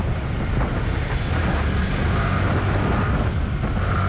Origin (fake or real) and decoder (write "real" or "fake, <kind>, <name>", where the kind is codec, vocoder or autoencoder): real